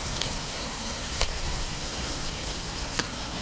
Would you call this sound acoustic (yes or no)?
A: no